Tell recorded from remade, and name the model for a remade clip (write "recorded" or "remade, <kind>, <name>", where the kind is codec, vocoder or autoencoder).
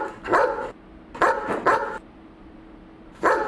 recorded